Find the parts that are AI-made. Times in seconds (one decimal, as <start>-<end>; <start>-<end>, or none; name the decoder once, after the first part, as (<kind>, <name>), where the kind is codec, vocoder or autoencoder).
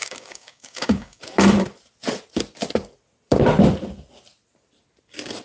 0.0-1.2 (codec, DAC)